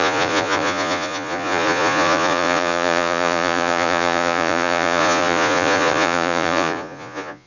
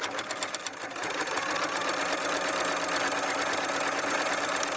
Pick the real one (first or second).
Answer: second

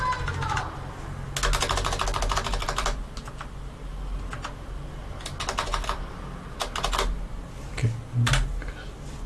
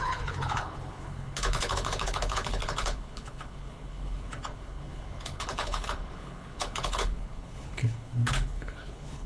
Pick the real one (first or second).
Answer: first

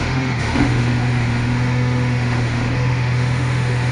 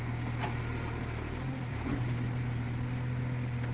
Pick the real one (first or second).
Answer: second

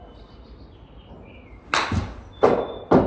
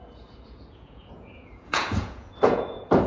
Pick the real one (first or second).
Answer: first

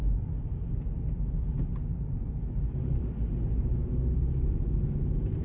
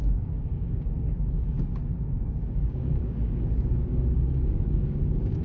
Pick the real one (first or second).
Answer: first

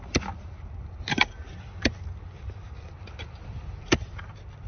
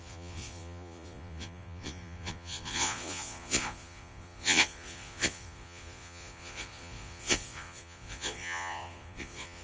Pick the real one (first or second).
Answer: first